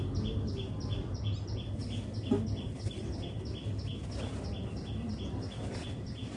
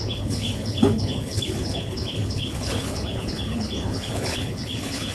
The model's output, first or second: second